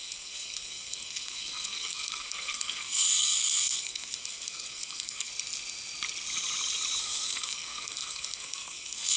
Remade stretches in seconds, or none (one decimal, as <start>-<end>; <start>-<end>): 0.0-5.3; 7.0-9.2